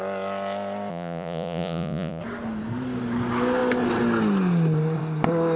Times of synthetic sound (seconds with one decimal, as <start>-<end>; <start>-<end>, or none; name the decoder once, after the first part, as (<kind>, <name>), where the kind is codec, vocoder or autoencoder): 0.9-2.2 (vocoder, Vocos)